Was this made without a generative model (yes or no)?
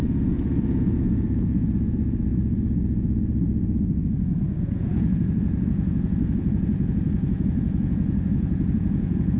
no